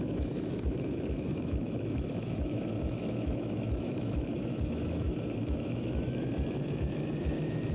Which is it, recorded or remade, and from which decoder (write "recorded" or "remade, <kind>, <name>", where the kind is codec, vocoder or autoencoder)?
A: remade, autoencoder, DAC-VAE